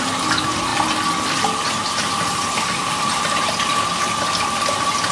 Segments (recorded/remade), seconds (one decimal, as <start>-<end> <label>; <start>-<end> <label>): 0.0-5.1 recorded

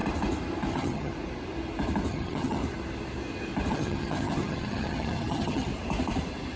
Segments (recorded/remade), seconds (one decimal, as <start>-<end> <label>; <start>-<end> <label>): 0.0-0.7 recorded; 0.7-1.1 remade; 1.1-2.1 recorded; 2.1-2.6 remade; 2.6-3.7 recorded; 3.7-5.7 remade; 5.7-6.6 recorded